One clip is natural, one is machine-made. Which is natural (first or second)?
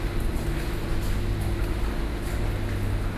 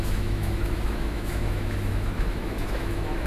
first